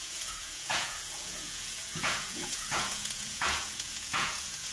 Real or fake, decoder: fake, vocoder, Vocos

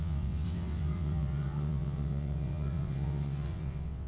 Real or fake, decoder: fake, vocoder, WaveNeXt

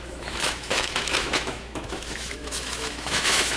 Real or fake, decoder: fake, autoencoder, DAC-VAE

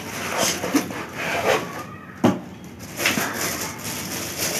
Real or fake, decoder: real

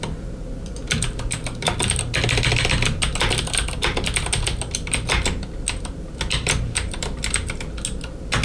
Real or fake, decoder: real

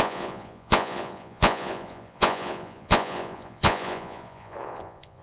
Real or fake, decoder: fake, vocoder, Vocos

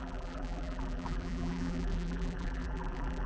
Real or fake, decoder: fake, vocoder, BigVGAN v2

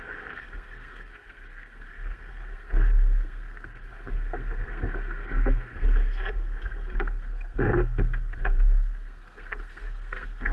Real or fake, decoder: fake, codec, SNAC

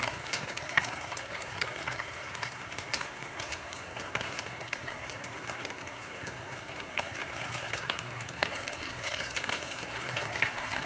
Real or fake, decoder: fake, codec, SNAC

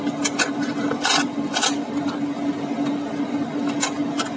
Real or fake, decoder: real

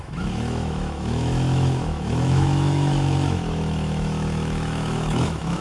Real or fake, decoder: fake, autoencoder, DAC-VAE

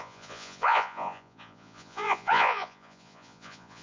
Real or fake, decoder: fake, vocoder, Vocos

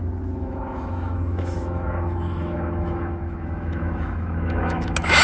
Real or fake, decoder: fake, autoencoder, DAC-VAE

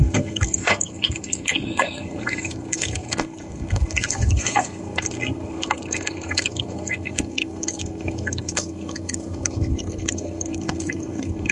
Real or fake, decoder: fake, codec, SNAC